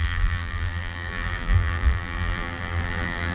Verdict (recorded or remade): remade